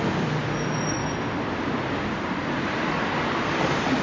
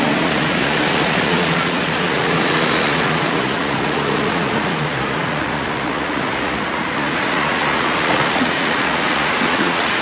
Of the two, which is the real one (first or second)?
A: first